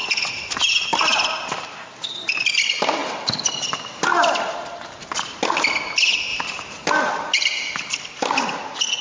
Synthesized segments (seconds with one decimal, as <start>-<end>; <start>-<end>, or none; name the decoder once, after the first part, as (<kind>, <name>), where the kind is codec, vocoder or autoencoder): none